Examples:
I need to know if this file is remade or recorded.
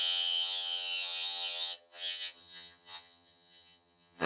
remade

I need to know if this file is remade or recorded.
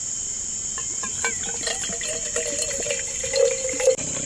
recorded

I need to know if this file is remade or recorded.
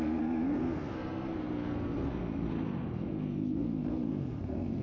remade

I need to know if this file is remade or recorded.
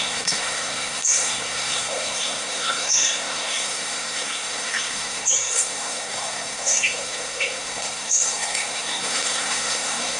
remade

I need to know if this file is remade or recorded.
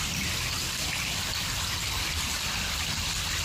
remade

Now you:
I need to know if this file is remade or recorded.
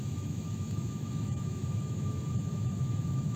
remade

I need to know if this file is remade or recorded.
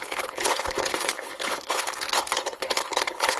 remade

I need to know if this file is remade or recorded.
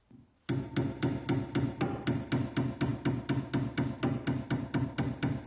recorded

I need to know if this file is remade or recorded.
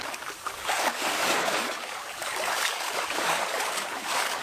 remade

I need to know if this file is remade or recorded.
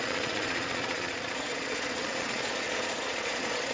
remade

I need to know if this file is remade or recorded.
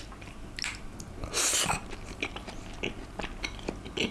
recorded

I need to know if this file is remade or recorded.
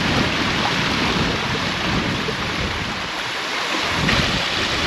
recorded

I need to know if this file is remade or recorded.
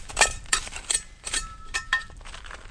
remade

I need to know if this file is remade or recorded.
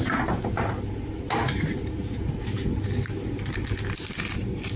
recorded